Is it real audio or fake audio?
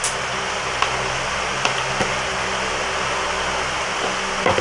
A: real